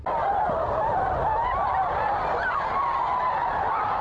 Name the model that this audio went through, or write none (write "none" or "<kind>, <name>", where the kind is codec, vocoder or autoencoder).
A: none